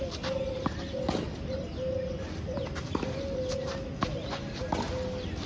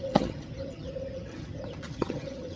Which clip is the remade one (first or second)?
second